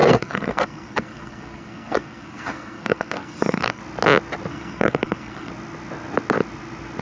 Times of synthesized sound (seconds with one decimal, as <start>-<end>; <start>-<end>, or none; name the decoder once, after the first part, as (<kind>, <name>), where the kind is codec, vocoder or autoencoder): 0.0-3.8 (codec, SNAC); 4.5-5.5